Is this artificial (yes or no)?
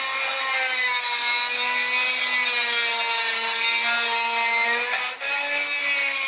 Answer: no